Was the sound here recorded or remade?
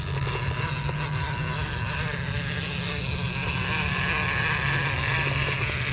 recorded